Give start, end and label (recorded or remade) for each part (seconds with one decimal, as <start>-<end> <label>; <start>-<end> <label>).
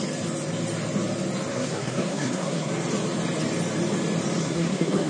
0.0-1.5 recorded; 1.5-2.7 remade; 2.7-4.4 recorded; 4.4-5.1 remade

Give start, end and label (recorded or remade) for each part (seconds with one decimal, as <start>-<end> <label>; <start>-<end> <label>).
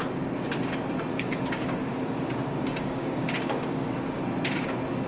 0.0-1.1 recorded; 1.1-4.2 remade; 4.2-5.1 recorded